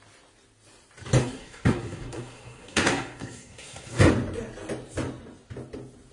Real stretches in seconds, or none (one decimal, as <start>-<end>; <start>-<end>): 0.0-1.2; 4.1-6.1